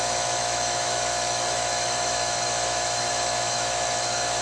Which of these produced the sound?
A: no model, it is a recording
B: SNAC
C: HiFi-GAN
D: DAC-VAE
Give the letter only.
D